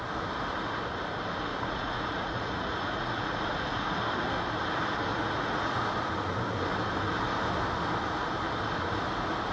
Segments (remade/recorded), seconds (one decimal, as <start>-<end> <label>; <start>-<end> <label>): 0.0-1.5 recorded; 1.5-4.0 remade; 4.0-5.1 recorded; 5.1-5.8 remade; 5.8-9.5 recorded

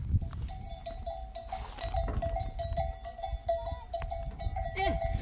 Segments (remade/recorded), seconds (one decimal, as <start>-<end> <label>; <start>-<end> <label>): 0.0-5.2 recorded

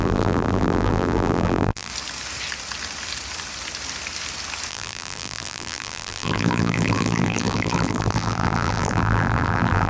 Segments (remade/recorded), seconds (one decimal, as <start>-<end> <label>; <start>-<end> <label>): 0.0-1.9 remade; 1.9-4.7 recorded; 4.7-9.9 remade

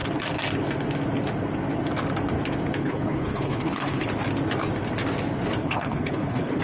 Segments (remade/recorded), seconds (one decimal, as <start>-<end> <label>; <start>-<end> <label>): 0.0-2.8 recorded; 2.8-4.1 remade; 4.1-5.6 recorded; 5.6-6.6 remade

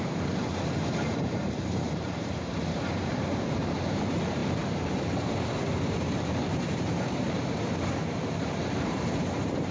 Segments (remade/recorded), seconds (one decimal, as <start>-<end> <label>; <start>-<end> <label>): 0.0-9.7 remade

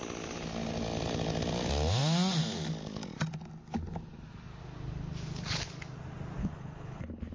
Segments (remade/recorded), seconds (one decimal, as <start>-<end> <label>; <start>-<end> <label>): 0.0-6.4 recorded; 6.4-7.3 remade

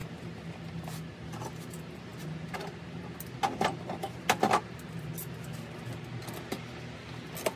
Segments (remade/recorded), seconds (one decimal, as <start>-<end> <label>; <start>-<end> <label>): 0.0-7.6 recorded